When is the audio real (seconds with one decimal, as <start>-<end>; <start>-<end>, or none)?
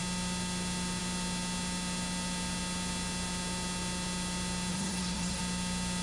0.0-4.7; 5.4-6.0